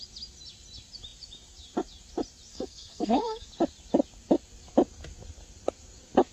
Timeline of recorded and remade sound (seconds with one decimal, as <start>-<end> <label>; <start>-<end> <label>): 0.0-2.5 recorded; 2.5-3.5 remade; 3.5-6.3 recorded